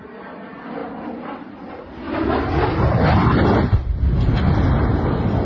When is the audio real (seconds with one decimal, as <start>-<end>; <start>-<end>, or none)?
0.0-5.5